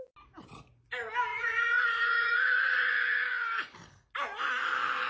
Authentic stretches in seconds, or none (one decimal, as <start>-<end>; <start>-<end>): 0.0-1.3; 3.2-5.1